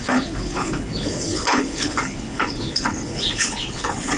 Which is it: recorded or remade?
remade